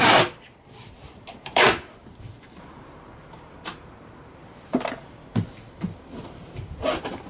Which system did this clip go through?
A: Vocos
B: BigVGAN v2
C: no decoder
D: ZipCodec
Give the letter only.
B